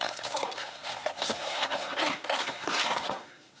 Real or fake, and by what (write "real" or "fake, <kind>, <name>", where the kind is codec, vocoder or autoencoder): fake, codec, SNAC